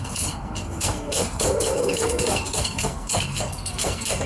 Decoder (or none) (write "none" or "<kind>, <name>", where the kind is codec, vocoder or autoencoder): codec, SNAC